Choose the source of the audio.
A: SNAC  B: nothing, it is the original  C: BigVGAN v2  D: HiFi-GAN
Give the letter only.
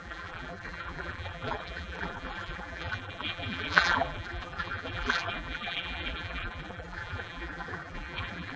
C